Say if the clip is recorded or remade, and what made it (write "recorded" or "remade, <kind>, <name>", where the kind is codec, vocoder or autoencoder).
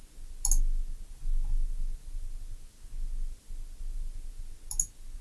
recorded